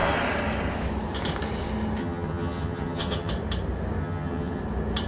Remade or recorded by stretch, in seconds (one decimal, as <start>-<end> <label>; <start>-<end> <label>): 0.0-2.0 recorded; 2.0-3.3 remade; 3.3-4.0 recorded; 4.0-4.6 remade; 4.6-5.1 recorded